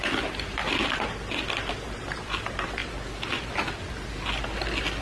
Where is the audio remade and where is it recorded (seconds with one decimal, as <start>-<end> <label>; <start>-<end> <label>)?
0.0-5.0 recorded